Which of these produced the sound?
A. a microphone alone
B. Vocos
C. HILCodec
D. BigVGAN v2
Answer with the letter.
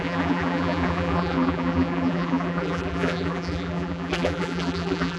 D